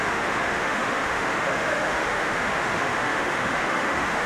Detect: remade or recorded remade